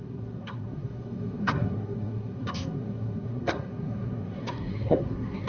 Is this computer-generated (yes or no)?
yes